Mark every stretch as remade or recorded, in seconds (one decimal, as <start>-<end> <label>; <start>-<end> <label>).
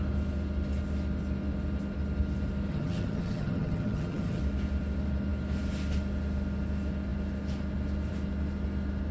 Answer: 0.0-2.7 recorded; 2.7-4.4 remade; 4.4-9.1 recorded